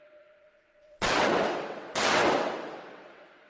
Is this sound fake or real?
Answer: fake